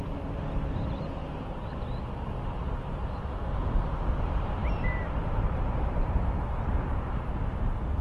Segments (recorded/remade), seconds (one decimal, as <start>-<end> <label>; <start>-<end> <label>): 0.0-1.2 recorded; 1.2-1.7 remade; 1.7-4.6 recorded; 4.6-6.3 remade; 6.3-8.0 recorded